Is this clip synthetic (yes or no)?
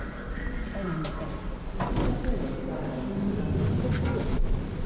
no